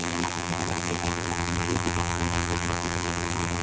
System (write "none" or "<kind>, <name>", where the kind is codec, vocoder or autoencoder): vocoder, BigVGAN v2